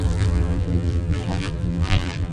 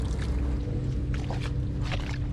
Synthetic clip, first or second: first